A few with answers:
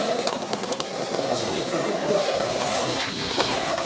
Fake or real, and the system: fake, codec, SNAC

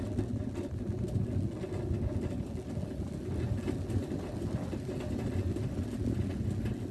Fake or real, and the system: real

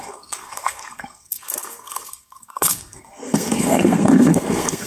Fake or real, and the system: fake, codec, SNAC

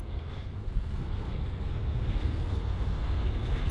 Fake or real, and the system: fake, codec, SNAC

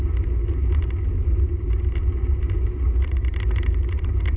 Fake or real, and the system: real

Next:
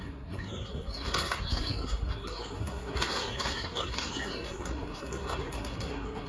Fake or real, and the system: fake, codec, SNAC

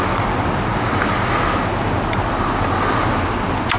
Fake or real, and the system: real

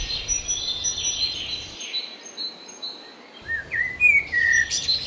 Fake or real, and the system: real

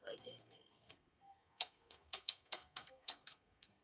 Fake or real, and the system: fake, codec, SNAC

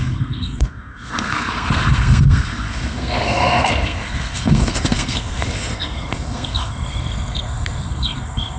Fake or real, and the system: fake, codec, SNAC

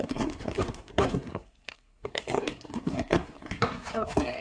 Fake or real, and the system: fake, codec, SNAC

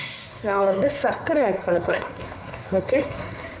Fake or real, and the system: fake, codec, SNAC